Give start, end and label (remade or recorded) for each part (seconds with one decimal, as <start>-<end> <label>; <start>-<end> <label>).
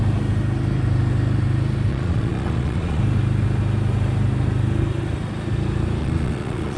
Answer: 0.0-1.9 recorded; 1.9-3.0 remade; 3.0-6.0 recorded; 6.0-6.8 remade